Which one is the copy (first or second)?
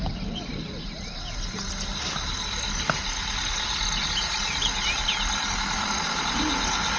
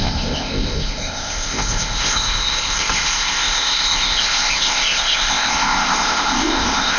second